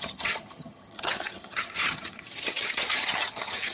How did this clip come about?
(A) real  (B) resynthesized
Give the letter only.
B